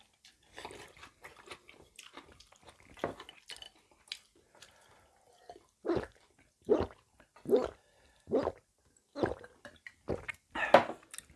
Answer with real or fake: real